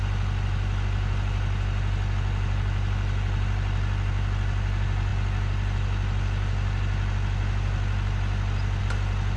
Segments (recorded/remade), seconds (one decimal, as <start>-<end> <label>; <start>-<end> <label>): 0.0-9.4 recorded